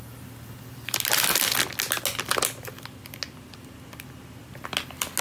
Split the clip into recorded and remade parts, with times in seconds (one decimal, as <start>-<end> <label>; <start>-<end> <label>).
0.0-5.2 recorded